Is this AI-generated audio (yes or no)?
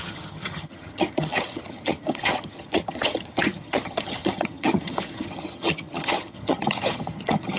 yes